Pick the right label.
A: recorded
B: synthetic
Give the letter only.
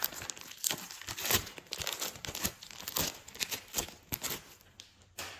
A